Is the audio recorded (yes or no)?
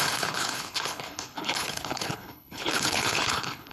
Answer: no